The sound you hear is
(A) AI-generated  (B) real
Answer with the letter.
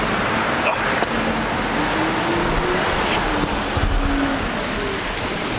B